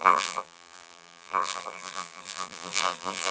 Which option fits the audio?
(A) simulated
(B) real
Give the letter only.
A